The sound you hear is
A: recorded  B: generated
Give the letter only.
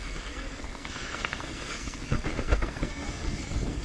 B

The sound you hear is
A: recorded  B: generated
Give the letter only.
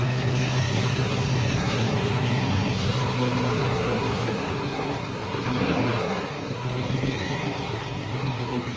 B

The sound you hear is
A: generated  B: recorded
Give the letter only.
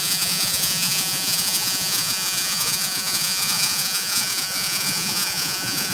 A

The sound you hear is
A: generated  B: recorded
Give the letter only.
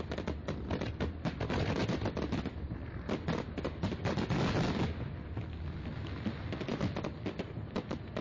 B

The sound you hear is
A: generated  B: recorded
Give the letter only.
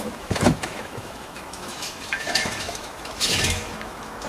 A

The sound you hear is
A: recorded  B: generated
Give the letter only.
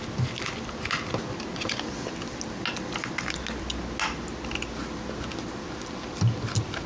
A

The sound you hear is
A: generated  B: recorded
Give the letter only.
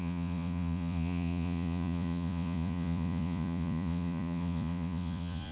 A